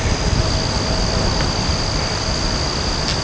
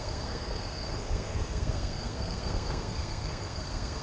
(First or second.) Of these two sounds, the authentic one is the first